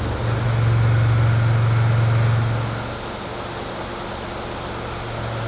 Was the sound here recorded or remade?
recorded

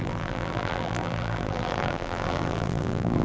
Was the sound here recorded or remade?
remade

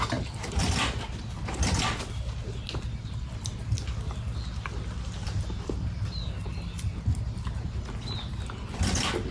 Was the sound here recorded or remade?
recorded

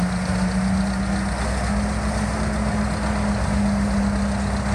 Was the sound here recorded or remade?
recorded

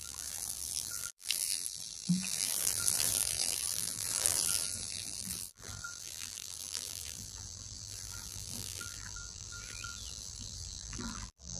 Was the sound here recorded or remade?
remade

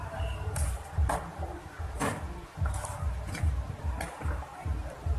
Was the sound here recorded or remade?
remade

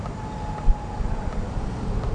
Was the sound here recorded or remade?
recorded